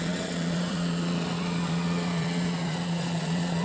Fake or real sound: fake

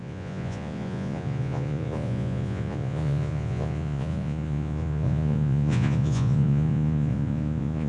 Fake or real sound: fake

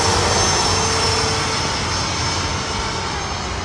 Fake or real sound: real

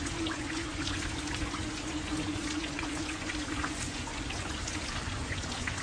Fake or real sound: fake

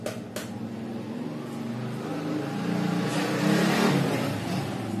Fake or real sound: real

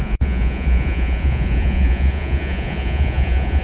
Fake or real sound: fake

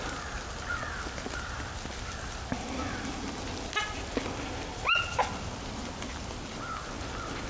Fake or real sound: real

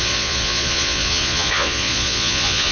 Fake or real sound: fake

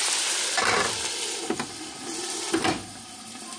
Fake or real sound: real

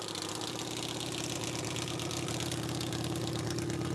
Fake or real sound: real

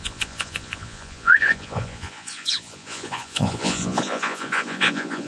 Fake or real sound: fake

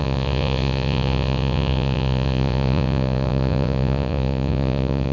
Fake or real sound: fake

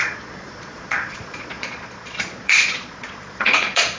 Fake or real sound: fake